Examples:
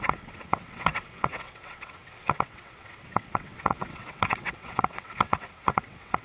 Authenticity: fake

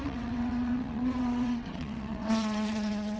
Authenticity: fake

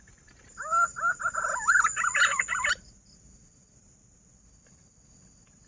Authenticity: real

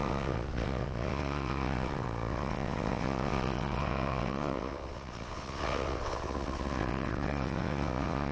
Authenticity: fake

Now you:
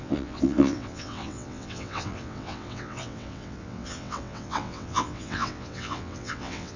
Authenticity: fake